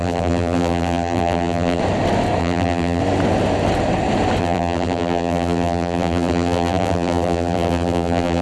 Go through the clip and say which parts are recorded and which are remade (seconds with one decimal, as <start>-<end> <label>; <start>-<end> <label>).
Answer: 0.0-1.8 remade; 1.8-2.4 recorded; 2.4-3.0 remade; 3.0-4.4 recorded; 4.4-8.4 remade